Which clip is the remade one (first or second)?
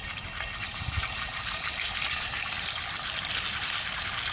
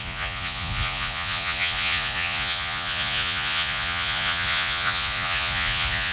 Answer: second